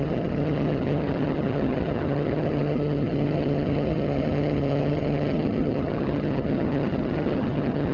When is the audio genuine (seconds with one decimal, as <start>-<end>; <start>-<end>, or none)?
none